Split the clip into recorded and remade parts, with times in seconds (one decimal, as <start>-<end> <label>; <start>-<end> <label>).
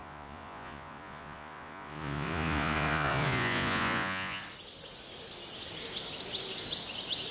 0.0-4.4 remade; 4.4-7.3 recorded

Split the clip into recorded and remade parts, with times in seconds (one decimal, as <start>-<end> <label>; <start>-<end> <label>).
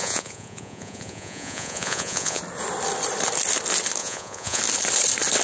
0.0-2.4 remade; 2.4-4.0 recorded; 4.0-4.6 remade; 4.6-5.4 recorded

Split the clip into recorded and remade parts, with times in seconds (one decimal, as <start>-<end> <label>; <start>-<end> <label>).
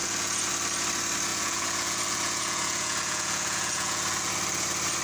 0.0-0.5 remade; 0.5-1.3 recorded; 1.3-4.3 remade; 4.3-5.0 recorded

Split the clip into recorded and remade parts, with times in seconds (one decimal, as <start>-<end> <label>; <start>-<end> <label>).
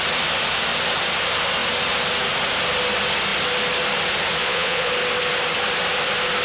0.0-4.4 recorded; 4.4-4.9 remade; 4.9-6.4 recorded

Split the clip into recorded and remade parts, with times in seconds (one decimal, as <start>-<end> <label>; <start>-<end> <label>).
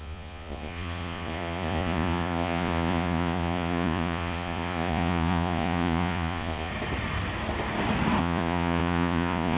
0.0-6.7 remade; 6.7-8.2 recorded; 8.2-9.6 remade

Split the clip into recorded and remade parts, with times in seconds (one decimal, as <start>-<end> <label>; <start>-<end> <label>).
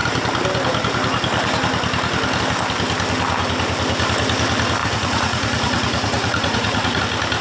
0.0-4.8 recorded; 4.8-7.0 remade; 7.0-7.4 recorded